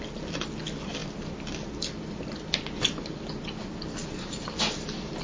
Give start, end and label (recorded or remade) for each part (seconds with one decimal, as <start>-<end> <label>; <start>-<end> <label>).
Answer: 0.0-4.0 recorded; 4.0-4.6 remade; 4.6-5.2 recorded